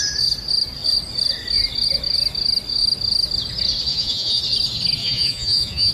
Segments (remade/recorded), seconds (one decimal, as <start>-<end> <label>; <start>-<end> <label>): 0.0-3.9 recorded; 3.9-4.4 remade; 4.4-5.0 recorded; 5.0-5.9 remade